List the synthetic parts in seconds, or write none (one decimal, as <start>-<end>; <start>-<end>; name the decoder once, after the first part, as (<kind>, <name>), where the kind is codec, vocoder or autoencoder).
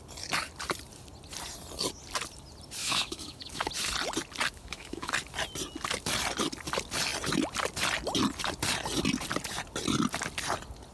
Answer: 2.8-3.7 (autoencoder, DAC-VAE); 4.5-5.1